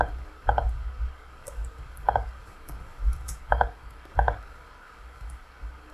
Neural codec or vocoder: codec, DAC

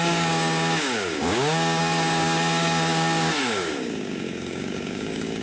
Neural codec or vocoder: codec, DAC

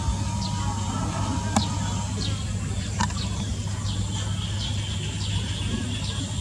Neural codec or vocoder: none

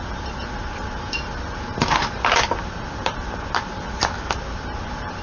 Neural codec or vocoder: none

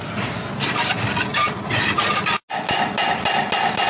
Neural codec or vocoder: none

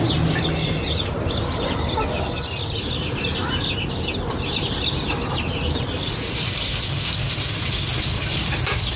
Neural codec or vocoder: none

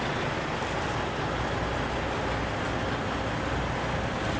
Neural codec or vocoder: none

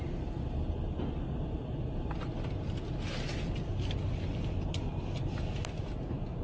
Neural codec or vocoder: none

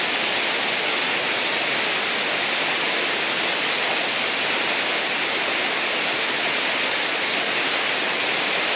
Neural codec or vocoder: none